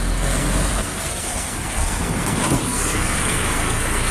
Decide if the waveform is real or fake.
fake